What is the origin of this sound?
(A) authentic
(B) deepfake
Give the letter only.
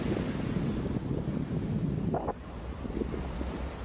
A